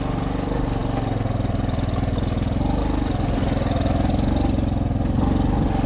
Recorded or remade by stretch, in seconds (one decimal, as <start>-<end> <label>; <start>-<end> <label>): 0.0-5.9 recorded